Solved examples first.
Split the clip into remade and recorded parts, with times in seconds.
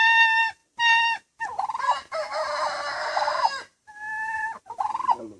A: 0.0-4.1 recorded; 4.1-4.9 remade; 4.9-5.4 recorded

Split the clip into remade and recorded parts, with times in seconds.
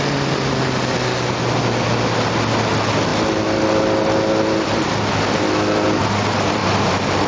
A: 0.0-6.6 recorded; 6.6-7.3 remade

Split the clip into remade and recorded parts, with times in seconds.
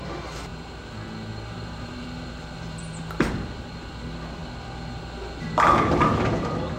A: 0.0-0.5 recorded; 0.5-3.3 remade; 3.3-6.8 recorded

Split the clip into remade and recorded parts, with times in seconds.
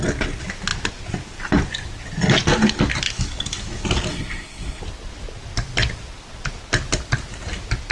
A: 0.0-4.1 recorded; 4.1-4.8 remade; 4.8-7.9 recorded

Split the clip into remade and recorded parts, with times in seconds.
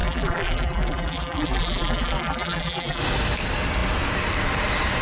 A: 0.0-3.0 remade; 3.0-5.0 recorded